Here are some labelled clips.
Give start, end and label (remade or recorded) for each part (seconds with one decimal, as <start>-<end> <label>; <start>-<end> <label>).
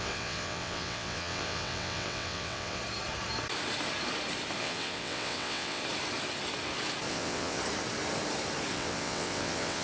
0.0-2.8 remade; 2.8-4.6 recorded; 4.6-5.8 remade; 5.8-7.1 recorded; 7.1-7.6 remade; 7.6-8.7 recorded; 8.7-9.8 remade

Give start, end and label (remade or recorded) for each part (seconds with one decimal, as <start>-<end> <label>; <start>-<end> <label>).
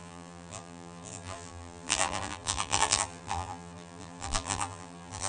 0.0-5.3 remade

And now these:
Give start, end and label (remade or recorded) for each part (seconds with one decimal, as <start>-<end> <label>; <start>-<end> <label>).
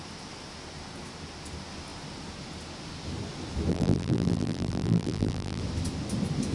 0.0-3.7 recorded; 3.7-5.6 remade; 5.6-6.5 recorded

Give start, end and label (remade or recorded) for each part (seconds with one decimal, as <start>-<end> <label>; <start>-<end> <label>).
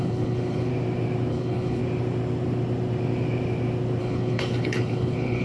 0.0-0.7 remade; 0.7-1.3 recorded; 1.3-1.8 remade; 1.8-4.0 recorded; 4.0-5.4 remade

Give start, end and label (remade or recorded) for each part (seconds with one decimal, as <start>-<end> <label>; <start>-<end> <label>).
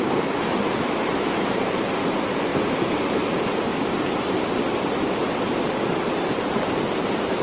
0.0-2.5 remade; 2.5-3.1 recorded; 3.1-3.7 remade; 3.7-6.0 recorded; 6.0-7.4 remade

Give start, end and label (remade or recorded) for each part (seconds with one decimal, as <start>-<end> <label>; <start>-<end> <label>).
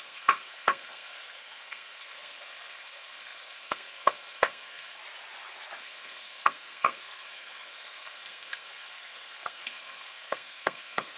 0.0-5.0 remade; 5.0-5.8 recorded; 5.8-11.2 remade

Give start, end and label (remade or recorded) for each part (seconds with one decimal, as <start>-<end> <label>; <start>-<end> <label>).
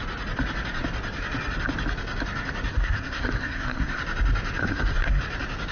0.0-2.7 recorded; 2.7-4.0 remade; 4.0-4.6 recorded; 4.6-5.2 remade; 5.2-5.7 recorded